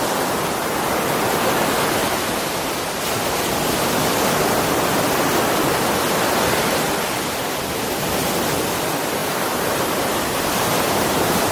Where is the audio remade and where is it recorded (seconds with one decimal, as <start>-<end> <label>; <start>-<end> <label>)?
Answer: 0.0-9.2 recorded; 9.2-11.5 remade